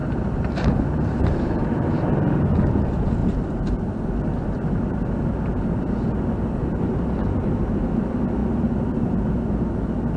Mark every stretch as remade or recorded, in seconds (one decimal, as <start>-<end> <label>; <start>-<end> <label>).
0.0-1.9 remade; 1.9-3.2 recorded; 3.2-4.0 remade; 4.0-10.2 recorded